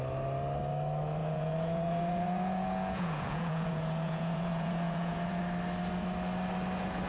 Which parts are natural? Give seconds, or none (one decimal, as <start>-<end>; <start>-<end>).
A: 0.0-1.2; 5.4-7.1